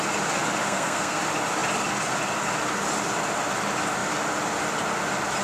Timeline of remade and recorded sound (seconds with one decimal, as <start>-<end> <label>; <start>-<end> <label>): 0.0-0.6 recorded; 0.6-1.2 remade; 1.2-5.4 recorded